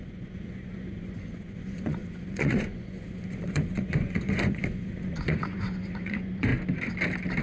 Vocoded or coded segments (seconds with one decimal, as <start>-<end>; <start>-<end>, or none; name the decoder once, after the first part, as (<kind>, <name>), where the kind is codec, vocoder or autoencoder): 0.0-6.5 (vocoder, Vocos)